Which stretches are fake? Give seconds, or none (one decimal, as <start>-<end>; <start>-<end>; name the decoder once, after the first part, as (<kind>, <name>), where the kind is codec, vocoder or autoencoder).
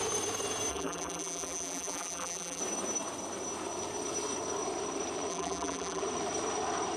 0.7-2.6 (vocoder, BigVGAN v2); 5.3-6.0